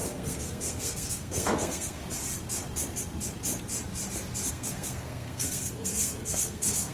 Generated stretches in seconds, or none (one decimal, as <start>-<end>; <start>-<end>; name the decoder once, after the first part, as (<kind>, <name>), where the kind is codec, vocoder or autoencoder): 0.0-2.0 (codec, SNAC); 4.5-6.9